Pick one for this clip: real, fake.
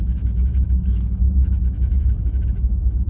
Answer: fake